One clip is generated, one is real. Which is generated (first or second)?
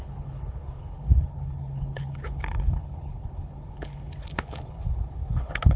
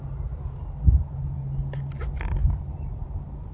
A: first